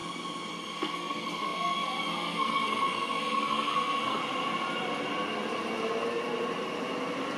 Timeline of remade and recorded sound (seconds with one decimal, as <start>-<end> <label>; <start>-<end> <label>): 0.0-0.5 recorded; 0.5-4.2 remade; 4.2-7.4 recorded